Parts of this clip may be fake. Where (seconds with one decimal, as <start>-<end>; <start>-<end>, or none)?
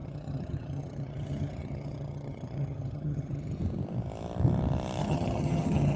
0.0-3.6; 5.0-6.0